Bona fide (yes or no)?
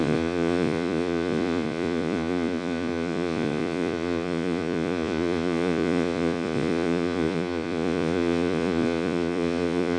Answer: no